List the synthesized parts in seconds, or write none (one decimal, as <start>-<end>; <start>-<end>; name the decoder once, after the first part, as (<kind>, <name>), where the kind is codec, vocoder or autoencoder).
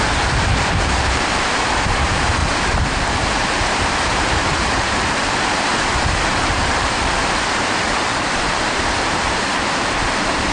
0.0-2.4 (vocoder, BigVGAN v2); 3.6-5.7; 6.4-10.5